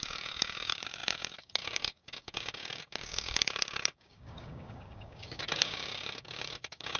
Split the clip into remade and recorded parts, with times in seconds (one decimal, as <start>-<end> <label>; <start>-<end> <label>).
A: 0.0-7.0 remade